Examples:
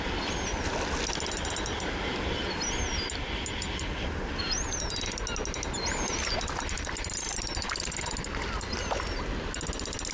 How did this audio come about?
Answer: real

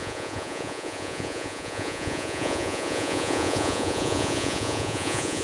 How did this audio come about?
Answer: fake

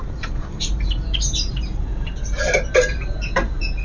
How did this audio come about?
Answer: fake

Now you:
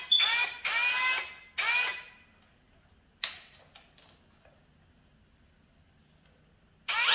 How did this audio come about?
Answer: real